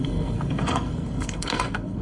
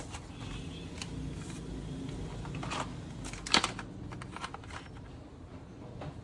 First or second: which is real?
second